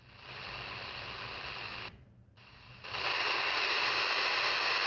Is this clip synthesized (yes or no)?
no